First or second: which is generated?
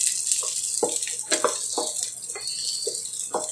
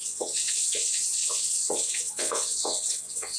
second